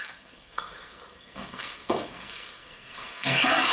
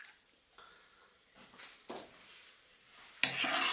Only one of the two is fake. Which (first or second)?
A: first